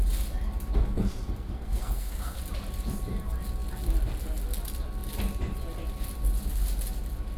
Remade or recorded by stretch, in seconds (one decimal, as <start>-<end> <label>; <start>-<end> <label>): 0.0-0.8 recorded; 0.8-2.4 remade; 2.4-7.4 recorded